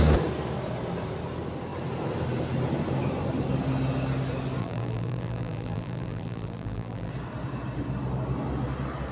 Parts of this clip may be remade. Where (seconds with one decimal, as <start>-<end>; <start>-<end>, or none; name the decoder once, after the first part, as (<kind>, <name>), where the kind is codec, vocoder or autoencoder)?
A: 4.6-7.1 (vocoder, BigVGAN v2)